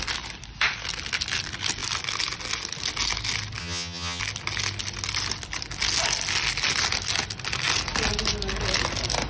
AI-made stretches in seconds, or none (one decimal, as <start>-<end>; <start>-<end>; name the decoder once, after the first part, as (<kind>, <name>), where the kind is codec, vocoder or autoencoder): 3.6-4.2 (vocoder, HiFi-GAN)